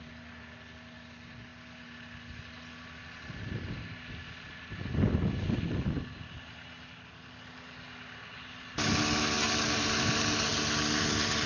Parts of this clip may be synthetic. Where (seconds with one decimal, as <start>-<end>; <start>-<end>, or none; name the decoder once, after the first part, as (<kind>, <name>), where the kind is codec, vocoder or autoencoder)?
none